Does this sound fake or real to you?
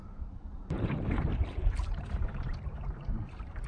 fake